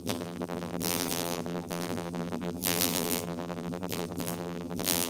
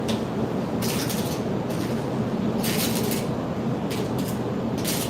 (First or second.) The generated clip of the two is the first